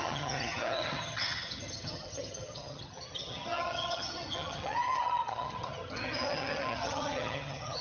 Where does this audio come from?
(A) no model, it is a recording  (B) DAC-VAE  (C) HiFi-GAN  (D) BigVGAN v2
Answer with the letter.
C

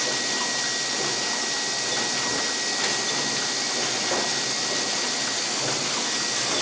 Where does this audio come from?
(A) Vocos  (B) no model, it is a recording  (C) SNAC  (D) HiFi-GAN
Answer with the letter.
B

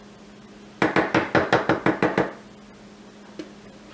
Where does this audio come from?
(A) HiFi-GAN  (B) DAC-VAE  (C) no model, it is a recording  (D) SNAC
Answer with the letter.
C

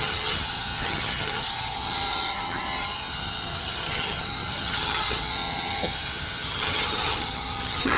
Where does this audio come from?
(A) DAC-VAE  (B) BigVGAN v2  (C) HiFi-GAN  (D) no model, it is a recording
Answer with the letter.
C